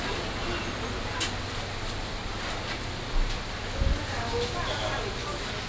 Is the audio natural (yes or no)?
yes